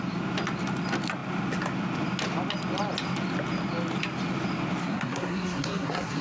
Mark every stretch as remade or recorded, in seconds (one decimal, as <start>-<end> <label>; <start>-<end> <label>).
0.0-4.8 recorded; 4.8-6.2 remade